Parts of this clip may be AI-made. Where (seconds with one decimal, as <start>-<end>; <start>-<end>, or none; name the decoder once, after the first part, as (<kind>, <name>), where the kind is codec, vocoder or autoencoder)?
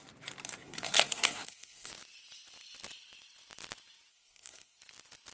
0.6-1.9 (codec, SNAC); 4.1-4.8